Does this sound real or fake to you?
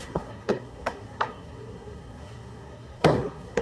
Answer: fake